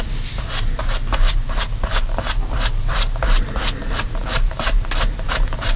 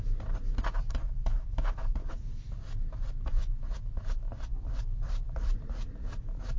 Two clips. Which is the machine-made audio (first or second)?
second